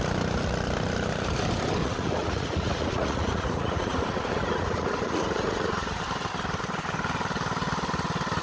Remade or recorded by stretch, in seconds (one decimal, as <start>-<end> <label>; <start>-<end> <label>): 0.0-1.8 recorded; 1.8-6.0 remade; 6.0-8.4 recorded